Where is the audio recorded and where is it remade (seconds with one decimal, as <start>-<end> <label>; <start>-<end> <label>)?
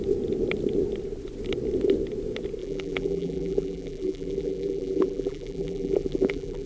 0.0-2.6 recorded; 2.6-6.7 remade